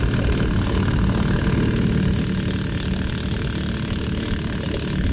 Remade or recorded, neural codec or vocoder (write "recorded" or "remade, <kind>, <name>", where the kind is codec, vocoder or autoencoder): recorded